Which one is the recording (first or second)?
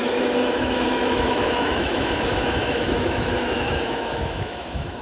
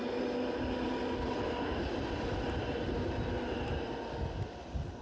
second